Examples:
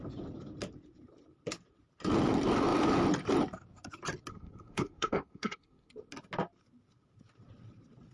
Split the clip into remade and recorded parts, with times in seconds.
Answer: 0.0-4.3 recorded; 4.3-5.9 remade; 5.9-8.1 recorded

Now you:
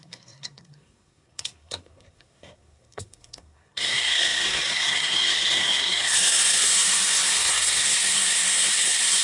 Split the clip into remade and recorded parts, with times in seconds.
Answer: 0.0-9.2 remade

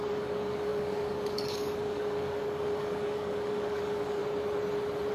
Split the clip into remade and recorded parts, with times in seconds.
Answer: 0.0-4.2 remade; 4.2-5.1 recorded